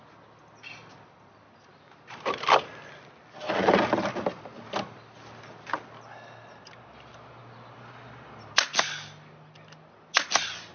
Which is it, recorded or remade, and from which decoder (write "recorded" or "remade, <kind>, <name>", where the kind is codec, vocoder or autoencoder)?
recorded